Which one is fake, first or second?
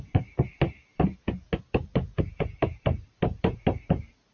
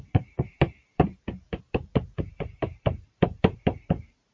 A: second